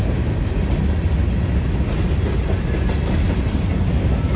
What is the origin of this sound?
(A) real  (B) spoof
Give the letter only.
A